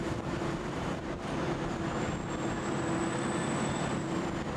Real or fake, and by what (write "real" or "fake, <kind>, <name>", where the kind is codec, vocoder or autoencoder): real